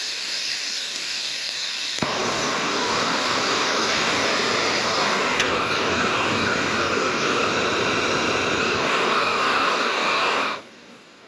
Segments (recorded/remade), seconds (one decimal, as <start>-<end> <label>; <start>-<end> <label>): 0.0-4.3 remade; 4.3-4.8 recorded; 4.8-7.5 remade; 7.5-8.6 recorded; 8.6-11.3 remade